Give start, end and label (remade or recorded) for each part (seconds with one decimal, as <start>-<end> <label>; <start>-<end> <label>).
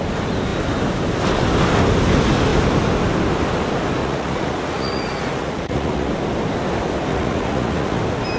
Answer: 0.0-4.0 recorded; 4.0-6.1 remade; 6.1-7.1 recorded; 7.1-8.0 remade; 8.0-8.4 recorded